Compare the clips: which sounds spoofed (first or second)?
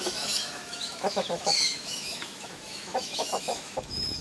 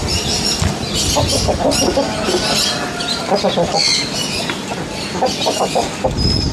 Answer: first